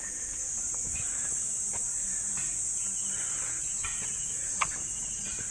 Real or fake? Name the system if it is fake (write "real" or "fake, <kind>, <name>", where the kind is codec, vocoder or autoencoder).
real